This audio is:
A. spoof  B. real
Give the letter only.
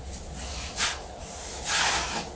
B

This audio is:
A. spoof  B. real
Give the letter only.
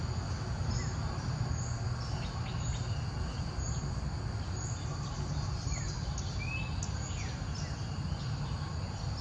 B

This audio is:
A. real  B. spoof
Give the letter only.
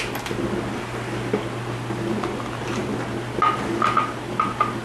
A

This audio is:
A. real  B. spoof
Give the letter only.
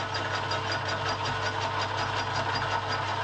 A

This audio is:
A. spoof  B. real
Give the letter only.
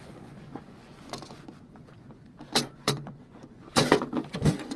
A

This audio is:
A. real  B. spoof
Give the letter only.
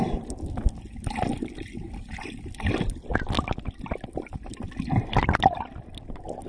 A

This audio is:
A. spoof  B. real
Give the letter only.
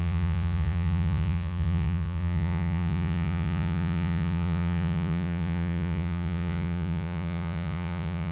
A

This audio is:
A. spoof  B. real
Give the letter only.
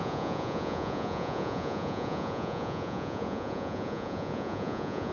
A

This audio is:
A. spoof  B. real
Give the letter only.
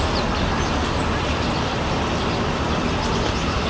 B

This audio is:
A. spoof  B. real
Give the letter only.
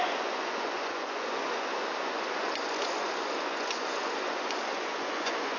A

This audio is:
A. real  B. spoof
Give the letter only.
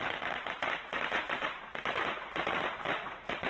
B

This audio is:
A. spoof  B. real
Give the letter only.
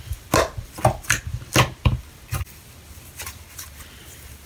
B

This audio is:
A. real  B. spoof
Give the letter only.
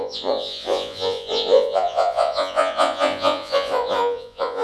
B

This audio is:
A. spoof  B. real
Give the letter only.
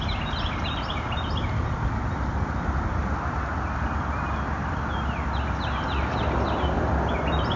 B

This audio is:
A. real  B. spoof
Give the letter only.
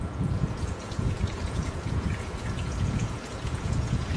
B